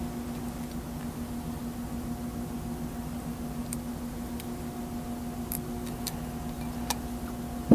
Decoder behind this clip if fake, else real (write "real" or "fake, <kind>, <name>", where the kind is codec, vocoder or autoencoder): real